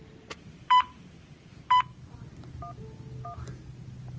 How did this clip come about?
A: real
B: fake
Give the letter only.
A